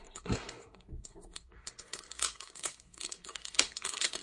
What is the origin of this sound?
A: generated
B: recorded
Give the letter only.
A